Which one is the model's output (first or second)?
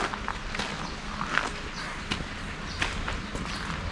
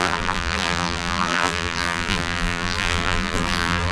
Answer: second